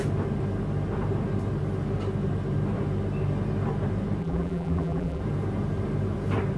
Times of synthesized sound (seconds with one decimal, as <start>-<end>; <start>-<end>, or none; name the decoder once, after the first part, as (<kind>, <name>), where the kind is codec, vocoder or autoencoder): 4.2-5.2 (vocoder, BigVGAN v2)